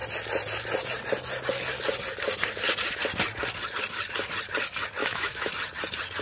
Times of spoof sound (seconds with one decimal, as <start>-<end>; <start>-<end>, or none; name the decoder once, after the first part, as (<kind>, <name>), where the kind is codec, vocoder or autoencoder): 5.0-5.5 (autoencoder, DAC-VAE)